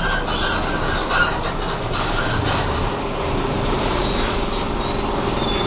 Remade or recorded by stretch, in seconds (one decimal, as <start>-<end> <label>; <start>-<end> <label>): 0.0-1.2 recorded; 1.2-4.6 remade; 4.6-5.7 recorded